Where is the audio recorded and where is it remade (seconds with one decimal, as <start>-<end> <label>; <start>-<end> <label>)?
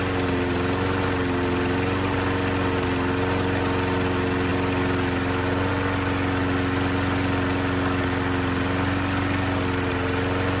0.0-10.6 recorded